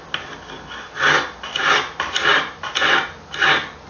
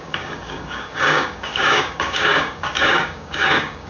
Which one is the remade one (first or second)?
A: second